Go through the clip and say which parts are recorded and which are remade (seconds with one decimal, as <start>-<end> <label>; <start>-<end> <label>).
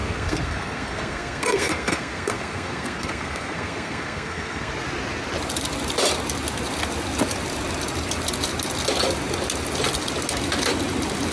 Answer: 0.0-4.7 remade; 4.7-11.3 recorded